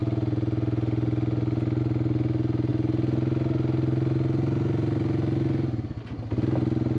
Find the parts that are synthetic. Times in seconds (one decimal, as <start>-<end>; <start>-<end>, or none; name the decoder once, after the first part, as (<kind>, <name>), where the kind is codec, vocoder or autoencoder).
none

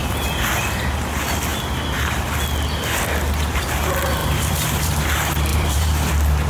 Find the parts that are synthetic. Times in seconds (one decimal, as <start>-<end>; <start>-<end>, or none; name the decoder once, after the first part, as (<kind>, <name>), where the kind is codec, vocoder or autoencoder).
4.2-5.0 (vocoder, BigVGAN v2); 5.5-6.1

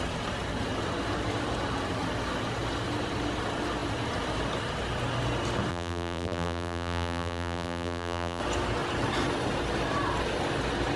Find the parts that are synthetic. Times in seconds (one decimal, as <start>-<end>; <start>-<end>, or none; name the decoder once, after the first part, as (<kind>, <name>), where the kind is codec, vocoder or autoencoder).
5.7-8.4 (vocoder, BigVGAN v2)